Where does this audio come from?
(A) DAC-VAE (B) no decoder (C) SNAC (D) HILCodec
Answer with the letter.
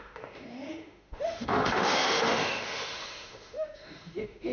A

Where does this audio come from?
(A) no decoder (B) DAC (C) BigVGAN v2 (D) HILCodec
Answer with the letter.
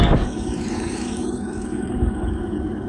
B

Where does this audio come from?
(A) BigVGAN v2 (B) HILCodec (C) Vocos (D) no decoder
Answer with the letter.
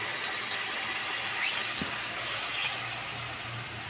D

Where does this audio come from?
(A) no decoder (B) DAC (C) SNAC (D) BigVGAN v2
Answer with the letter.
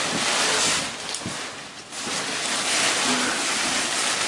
A